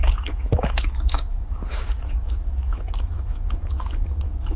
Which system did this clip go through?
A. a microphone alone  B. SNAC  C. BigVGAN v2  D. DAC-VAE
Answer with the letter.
D